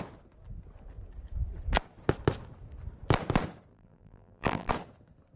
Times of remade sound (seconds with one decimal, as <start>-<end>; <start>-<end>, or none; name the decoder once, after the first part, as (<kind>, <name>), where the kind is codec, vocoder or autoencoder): 3.7-4.7 (vocoder, BigVGAN v2)